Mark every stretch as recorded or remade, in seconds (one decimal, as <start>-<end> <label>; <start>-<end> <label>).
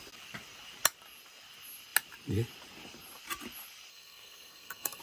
0.0-3.9 recorded; 3.9-5.0 remade